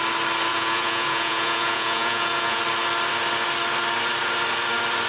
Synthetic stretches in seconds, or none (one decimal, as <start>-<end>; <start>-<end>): 0.5-2.6